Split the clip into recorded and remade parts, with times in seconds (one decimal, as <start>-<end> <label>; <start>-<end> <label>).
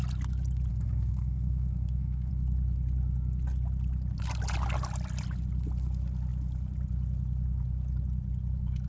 0.0-0.7 recorded; 0.7-2.3 remade; 2.3-8.9 recorded